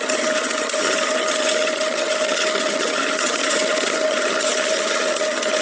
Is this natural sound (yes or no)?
no